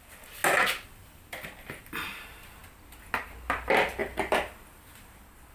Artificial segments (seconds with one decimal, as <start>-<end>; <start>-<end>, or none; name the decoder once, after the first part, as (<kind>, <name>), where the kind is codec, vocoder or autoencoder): 0.0-0.4 (vocoder, BigVGAN v2); 1.8-2.6; 3.2-5.5